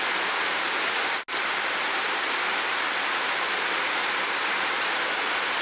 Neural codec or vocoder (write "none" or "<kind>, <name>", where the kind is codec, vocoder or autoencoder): none